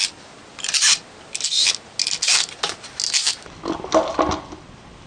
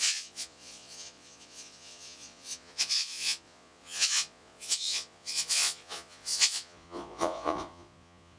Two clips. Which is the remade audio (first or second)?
second